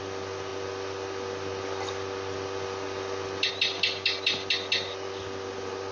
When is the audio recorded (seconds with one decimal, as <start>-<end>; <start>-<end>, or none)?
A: 0.0-5.9